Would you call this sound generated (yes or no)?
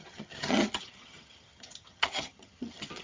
yes